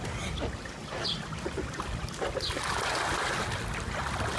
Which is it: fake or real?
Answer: real